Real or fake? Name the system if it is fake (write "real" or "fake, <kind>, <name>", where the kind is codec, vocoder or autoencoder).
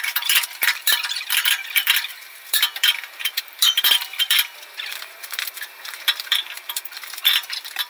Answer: fake, vocoder, BigVGAN v2